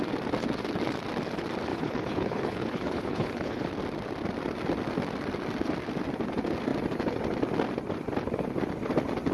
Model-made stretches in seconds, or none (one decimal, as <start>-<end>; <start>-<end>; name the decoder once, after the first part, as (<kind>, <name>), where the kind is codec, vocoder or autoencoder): 1.7-3.7 (codec, HILCodec)